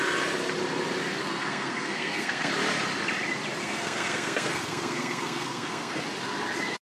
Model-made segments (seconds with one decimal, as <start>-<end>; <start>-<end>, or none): 1.2-2.5; 3.6-6.0